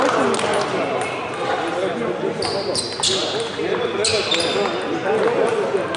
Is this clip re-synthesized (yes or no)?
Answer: no